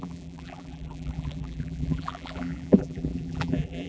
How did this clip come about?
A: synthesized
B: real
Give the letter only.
A